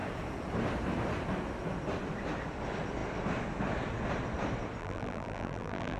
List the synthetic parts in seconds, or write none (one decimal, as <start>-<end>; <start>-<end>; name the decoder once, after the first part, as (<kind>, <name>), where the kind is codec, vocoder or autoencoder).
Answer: 4.8-6.0 (vocoder, BigVGAN v2)